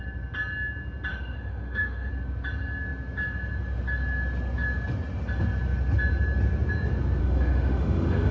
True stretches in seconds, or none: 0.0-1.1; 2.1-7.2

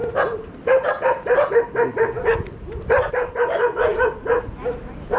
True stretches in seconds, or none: 0.0-5.2

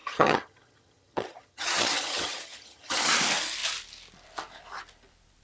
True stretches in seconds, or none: 3.2-5.4

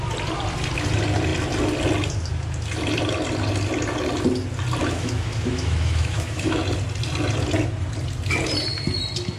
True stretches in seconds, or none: 0.0-4.8; 6.6-9.4

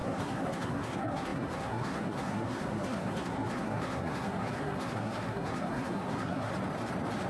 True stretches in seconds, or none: 6.5-7.3

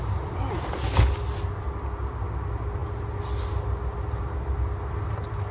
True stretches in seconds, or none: 0.0-5.5

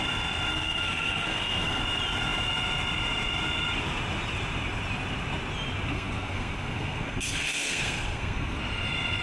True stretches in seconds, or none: 0.0-0.5; 1.8-5.9; 8.6-9.2